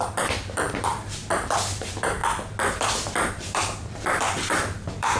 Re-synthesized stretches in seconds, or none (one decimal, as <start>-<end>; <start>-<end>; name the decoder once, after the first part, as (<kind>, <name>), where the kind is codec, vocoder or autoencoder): 0.0-1.2 (vocoder, BigVGAN v2); 1.8-2.2; 3.3-5.2